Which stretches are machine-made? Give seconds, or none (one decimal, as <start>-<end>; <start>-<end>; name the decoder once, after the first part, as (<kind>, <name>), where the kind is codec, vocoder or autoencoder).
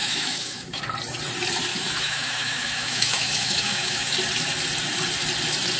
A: 0.0-0.8 (autoencoder, DAC-VAE); 1.7-4.1